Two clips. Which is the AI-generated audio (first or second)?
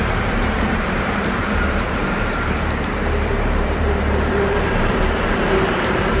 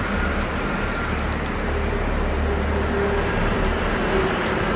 first